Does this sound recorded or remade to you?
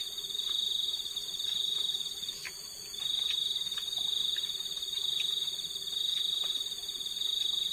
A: recorded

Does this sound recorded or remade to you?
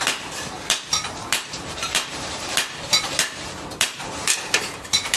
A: remade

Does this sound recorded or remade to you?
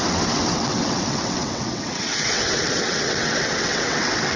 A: remade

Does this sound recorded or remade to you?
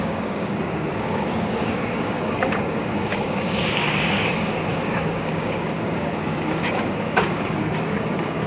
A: remade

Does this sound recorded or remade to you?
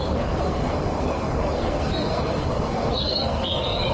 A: remade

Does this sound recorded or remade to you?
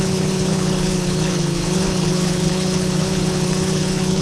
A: remade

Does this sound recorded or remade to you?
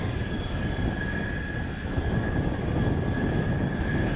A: recorded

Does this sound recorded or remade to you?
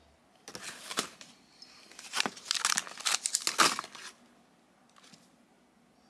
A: recorded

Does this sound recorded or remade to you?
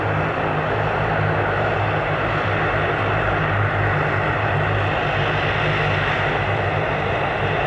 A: recorded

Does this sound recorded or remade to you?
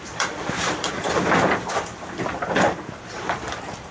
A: remade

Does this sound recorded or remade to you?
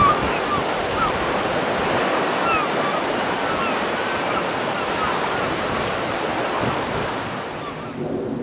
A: recorded